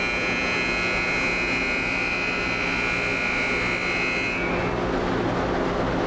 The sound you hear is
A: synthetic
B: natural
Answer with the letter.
B